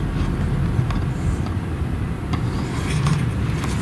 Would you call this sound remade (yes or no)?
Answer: no